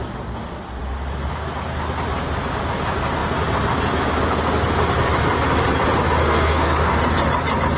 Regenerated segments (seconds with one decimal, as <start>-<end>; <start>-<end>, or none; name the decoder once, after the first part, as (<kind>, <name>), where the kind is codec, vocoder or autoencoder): 6.2-6.8 (codec, SNAC)